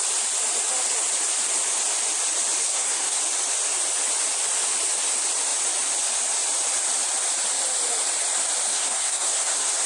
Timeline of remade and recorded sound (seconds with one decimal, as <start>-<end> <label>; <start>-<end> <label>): 0.0-2.6 recorded; 2.6-3.2 remade; 3.2-8.7 recorded; 8.7-9.9 remade